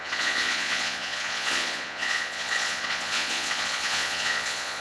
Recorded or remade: remade